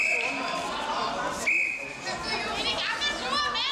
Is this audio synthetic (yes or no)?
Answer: no